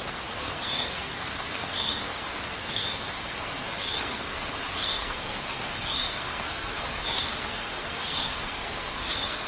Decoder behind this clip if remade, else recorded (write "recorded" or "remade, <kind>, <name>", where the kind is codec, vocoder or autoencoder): remade, codec, SNAC